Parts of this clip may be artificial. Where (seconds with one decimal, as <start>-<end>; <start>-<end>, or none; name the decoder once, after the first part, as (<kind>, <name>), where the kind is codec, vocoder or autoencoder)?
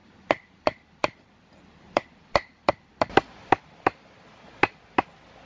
0.0-3.0 (vocoder, BigVGAN v2)